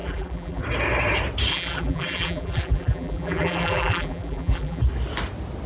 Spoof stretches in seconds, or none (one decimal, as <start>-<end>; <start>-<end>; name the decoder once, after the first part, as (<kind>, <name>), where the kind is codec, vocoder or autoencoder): 0.0-0.6 (vocoder, BigVGAN v2); 1.5-4.8